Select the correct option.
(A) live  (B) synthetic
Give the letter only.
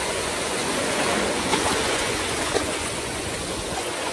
B